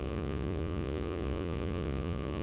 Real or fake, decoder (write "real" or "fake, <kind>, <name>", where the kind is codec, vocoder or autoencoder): fake, vocoder, Vocos